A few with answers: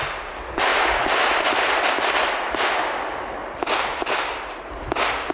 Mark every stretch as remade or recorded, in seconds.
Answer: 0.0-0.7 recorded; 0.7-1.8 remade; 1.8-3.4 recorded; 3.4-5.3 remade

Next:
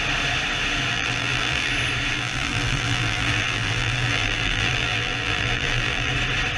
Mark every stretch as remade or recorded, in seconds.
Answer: 0.0-0.9 recorded; 0.9-1.7 remade; 1.7-2.1 recorded; 2.1-6.1 remade; 6.1-6.6 recorded

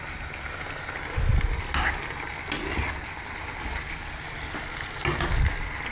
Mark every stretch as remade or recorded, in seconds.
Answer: 0.0-5.9 recorded

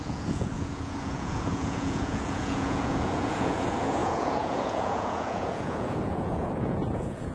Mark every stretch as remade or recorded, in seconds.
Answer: 0.0-7.3 remade

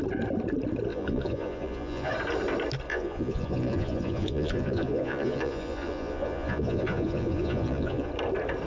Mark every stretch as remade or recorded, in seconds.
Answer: 0.0-0.9 recorded; 0.9-2.1 remade; 2.1-2.9 recorded; 2.9-8.1 remade; 8.1-8.7 recorded

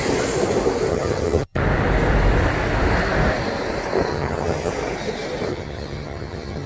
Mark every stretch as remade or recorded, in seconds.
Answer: 0.0-0.9 recorded; 0.9-1.6 remade; 1.6-4.1 recorded; 4.1-4.7 remade; 4.7-5.5 recorded; 5.5-6.7 remade

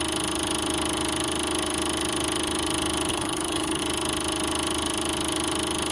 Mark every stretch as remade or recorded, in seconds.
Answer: 0.0-3.1 recorded; 3.1-3.8 remade; 3.8-5.9 recorded

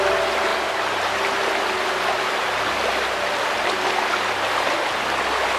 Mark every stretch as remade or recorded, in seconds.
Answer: 0.0-5.6 recorded